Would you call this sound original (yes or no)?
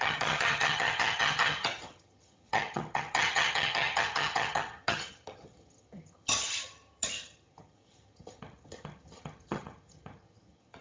no